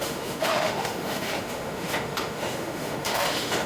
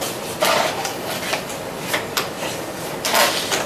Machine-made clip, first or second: first